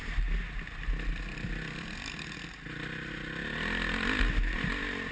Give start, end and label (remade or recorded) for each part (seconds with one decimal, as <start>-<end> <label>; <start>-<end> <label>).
0.0-5.1 recorded